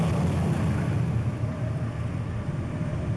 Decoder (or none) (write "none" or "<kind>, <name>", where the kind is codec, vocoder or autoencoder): none